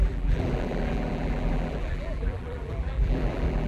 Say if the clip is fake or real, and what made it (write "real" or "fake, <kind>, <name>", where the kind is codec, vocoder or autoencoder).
fake, vocoder, BigVGAN v2